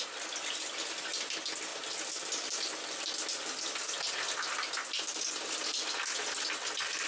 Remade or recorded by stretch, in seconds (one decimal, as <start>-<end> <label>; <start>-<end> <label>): 0.0-7.1 recorded